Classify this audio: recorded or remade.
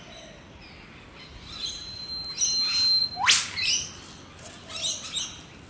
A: recorded